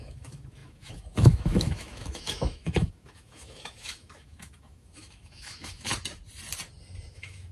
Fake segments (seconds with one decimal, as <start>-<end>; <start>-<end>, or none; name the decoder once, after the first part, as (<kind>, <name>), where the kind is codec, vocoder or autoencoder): 0.0-5.9 (autoencoder, DAC-VAE); 7.1-7.5